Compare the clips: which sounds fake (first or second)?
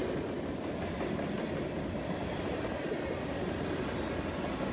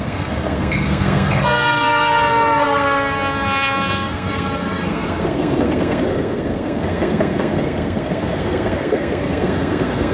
second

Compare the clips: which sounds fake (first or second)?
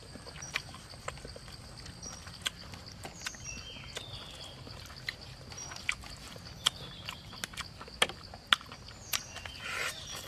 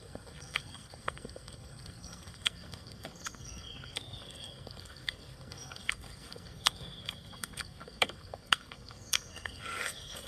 second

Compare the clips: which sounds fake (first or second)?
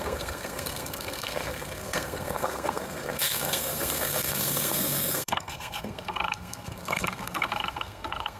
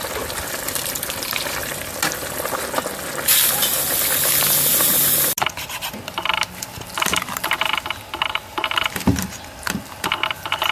first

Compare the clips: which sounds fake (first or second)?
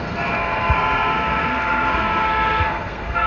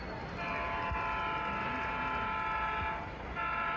first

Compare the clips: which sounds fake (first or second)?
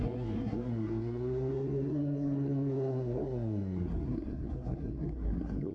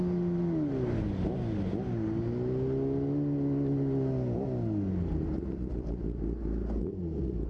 first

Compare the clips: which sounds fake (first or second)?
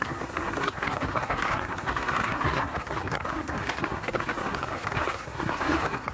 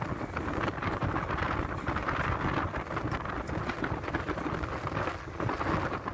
first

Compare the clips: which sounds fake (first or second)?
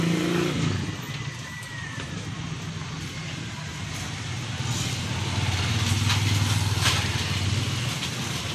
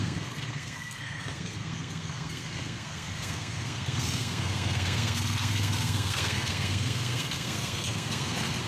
second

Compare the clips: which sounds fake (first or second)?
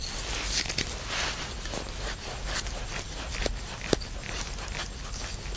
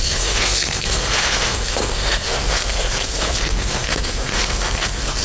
second